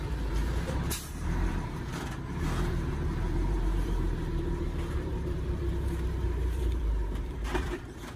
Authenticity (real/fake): fake